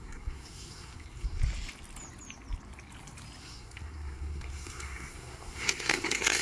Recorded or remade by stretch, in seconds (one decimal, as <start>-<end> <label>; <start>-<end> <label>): 0.0-1.4 remade; 1.4-3.4 recorded; 3.4-6.4 remade